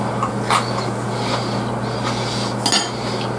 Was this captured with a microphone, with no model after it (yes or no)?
yes